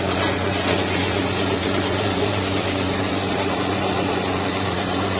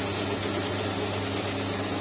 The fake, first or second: first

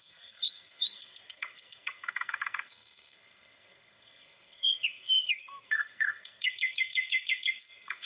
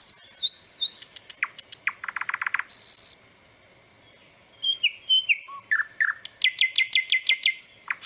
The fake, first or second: first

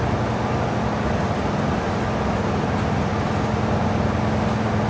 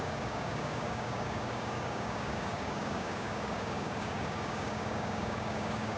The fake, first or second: second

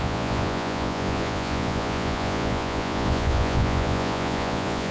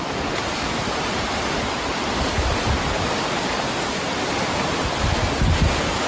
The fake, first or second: first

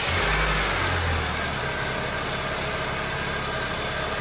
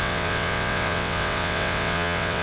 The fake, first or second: second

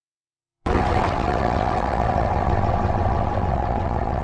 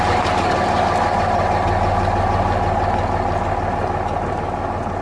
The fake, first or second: first